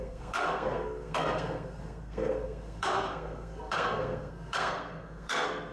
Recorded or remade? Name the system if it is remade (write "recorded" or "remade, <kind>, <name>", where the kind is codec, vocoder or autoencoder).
remade, codec, SNAC